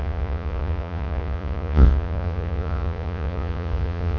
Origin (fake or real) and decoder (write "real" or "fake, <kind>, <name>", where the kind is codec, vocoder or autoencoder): fake, vocoder, Vocos